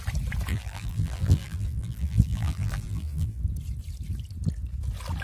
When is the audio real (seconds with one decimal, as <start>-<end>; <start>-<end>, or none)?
0.0-0.5; 3.4-5.2